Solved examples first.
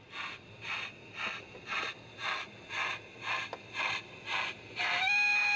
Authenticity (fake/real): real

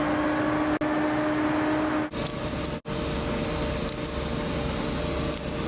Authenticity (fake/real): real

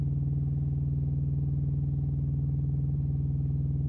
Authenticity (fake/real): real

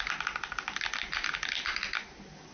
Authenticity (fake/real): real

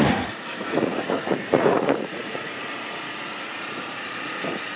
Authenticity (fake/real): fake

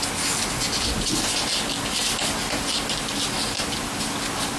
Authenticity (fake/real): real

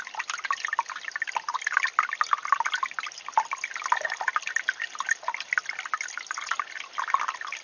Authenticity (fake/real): real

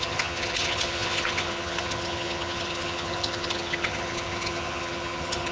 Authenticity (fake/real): fake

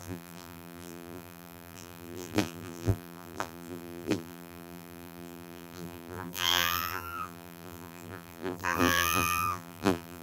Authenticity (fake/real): fake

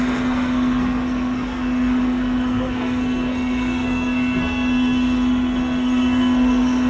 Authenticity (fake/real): fake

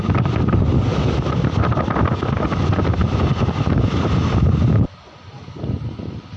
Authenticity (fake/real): real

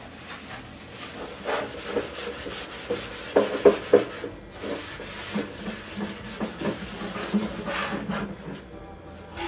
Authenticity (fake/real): real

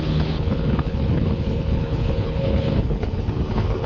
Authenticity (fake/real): fake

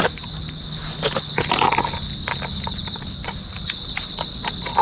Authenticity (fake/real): real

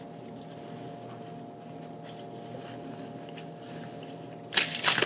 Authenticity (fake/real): real